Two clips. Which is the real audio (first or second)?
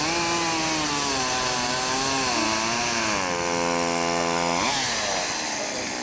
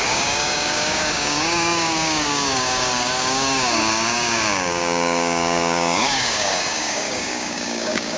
first